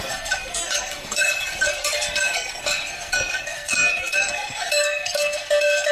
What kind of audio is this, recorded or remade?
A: remade